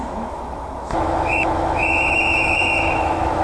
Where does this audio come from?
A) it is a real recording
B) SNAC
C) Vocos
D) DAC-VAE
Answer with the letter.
D